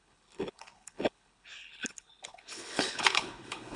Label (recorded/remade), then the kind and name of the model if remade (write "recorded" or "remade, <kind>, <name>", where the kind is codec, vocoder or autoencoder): remade, codec, HILCodec